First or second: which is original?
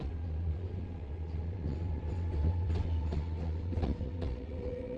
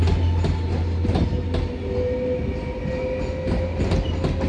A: second